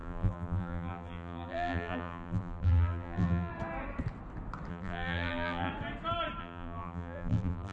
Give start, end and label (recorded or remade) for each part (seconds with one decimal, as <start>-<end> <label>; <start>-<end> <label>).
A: 0.0-3.5 remade; 3.5-4.7 recorded; 4.7-5.7 remade; 5.7-6.4 recorded; 6.4-7.7 remade

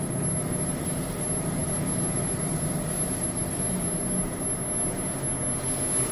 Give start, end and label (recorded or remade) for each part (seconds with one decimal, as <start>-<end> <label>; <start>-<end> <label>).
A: 0.0-6.1 recorded

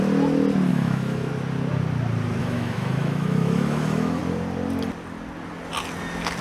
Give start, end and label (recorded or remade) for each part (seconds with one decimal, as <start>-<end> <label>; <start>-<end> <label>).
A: 0.0-0.7 recorded; 0.7-1.3 remade; 1.3-2.4 recorded; 2.4-4.2 remade; 4.2-6.4 recorded

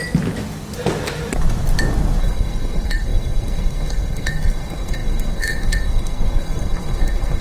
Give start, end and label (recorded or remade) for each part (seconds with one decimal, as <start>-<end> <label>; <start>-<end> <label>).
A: 0.0-2.2 recorded; 2.2-7.4 remade